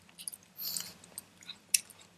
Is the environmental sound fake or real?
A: real